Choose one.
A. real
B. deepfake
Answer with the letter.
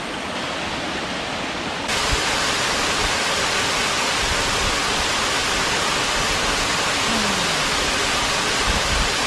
A